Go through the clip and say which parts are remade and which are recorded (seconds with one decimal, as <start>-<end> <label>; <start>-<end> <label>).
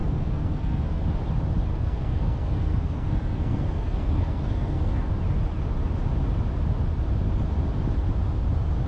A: 0.0-1.0 remade; 1.0-1.7 recorded; 1.7-5.1 remade; 5.1-8.9 recorded